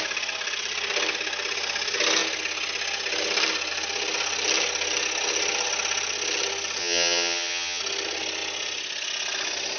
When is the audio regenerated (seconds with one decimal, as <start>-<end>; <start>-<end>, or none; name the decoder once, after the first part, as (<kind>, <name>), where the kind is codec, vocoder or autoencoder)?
6.8-7.8 (vocoder, HiFi-GAN)